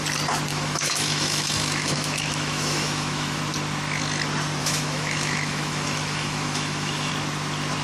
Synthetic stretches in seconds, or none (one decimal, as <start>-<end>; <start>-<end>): 0.5-3.4; 4.6-7.1